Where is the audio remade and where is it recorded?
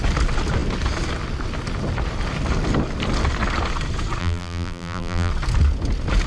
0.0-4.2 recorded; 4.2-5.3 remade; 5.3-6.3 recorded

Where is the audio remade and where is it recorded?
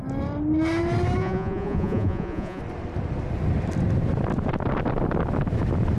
0.0-1.2 recorded; 1.2-2.6 remade; 2.6-6.0 recorded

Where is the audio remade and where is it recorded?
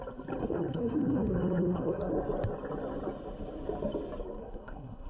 0.0-0.4 recorded; 0.4-2.1 remade; 2.1-4.4 recorded; 4.4-5.1 remade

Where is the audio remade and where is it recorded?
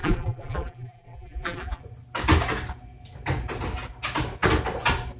0.0-1.8 remade; 1.8-5.2 recorded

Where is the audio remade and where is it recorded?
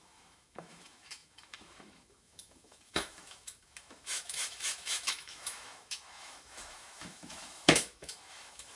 0.0-8.8 remade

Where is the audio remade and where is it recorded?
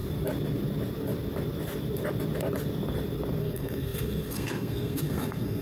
0.0-3.4 recorded; 3.4-5.6 remade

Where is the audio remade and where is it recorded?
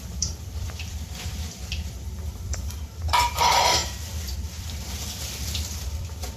0.0-3.8 remade; 3.8-4.6 recorded; 4.6-6.4 remade